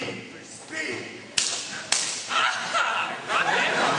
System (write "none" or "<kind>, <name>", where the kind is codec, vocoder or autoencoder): none